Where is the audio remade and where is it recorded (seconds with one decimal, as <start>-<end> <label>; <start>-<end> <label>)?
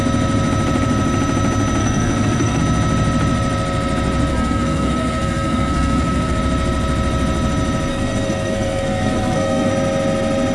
0.0-1.8 recorded; 1.8-2.6 remade; 2.6-4.3 recorded; 4.3-6.4 remade; 6.4-7.9 recorded; 7.9-9.7 remade; 9.7-10.5 recorded